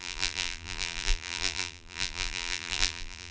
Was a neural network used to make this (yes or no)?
yes